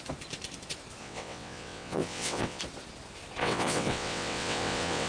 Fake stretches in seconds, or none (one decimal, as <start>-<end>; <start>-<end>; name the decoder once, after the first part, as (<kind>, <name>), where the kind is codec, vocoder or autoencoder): 1.0-2.6 (vocoder, WaveNeXt); 3.4-5.1